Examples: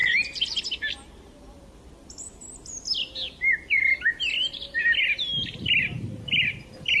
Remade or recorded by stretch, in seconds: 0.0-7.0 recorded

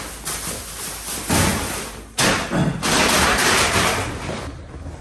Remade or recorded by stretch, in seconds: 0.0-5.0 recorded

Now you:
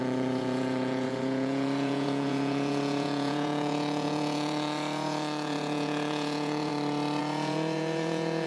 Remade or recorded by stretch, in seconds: 0.0-6.7 remade; 6.7-7.2 recorded; 7.2-8.5 remade

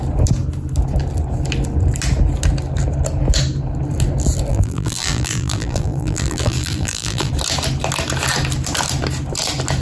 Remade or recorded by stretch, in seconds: 0.0-4.5 recorded; 4.5-7.3 remade; 7.3-9.8 recorded

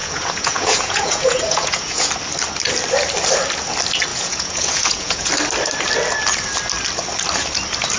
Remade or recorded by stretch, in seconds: 0.0-2.1 remade; 2.1-4.1 recorded; 4.1-5.3 remade; 5.3-8.0 recorded

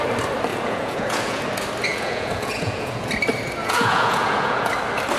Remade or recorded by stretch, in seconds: 0.0-0.5 recorded; 0.5-1.4 remade; 1.4-1.9 recorded; 1.9-3.1 remade; 3.1-3.6 recorded; 3.6-4.7 remade; 4.7-5.2 recorded